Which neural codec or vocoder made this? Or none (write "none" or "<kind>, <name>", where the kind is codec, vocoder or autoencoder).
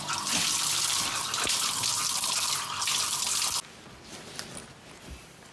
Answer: none